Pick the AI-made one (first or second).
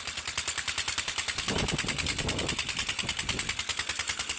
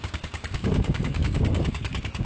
second